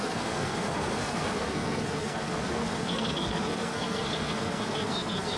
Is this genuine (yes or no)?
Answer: no